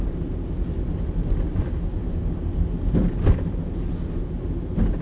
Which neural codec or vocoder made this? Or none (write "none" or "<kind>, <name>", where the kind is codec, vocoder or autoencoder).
none